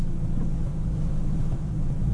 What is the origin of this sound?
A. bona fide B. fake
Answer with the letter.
A